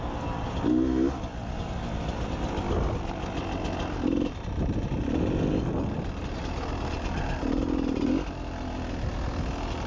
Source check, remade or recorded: recorded